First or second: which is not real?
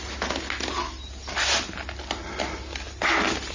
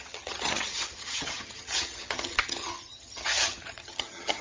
second